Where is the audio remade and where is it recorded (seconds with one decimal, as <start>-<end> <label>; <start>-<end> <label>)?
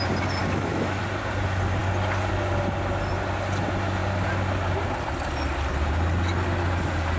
0.0-0.4 recorded; 0.4-1.0 remade; 1.0-7.2 recorded